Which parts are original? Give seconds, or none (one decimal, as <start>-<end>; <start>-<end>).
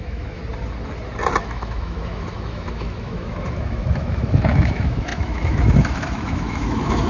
0.4-1.4